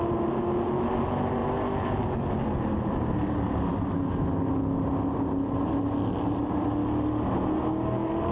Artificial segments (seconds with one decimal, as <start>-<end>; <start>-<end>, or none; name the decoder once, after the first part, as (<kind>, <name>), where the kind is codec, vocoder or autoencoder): none